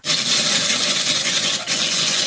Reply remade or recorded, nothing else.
remade